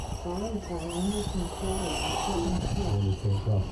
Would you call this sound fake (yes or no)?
no